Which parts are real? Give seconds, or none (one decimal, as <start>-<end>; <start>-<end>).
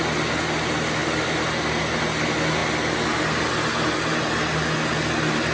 0.0-5.5